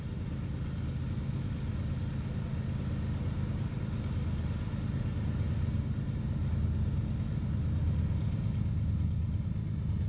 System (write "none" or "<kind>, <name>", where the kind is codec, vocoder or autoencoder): none